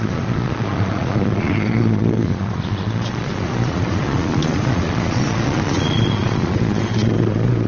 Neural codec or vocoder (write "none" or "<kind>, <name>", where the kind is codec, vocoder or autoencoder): vocoder, Vocos